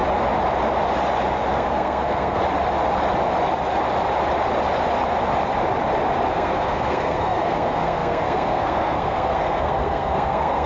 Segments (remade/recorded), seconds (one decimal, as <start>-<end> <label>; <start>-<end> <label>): 0.0-1.5 recorded; 1.5-2.4 remade; 2.4-6.3 recorded; 6.3-10.7 remade